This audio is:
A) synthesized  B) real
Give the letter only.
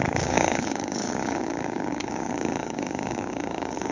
A